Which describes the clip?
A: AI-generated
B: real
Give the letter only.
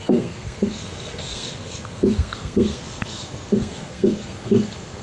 A